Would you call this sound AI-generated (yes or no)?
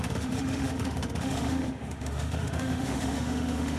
yes